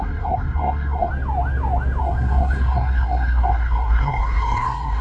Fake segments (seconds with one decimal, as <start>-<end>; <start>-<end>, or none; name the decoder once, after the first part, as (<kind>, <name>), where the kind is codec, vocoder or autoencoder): 0.0-1.1 (codec, SNAC); 2.0-5.0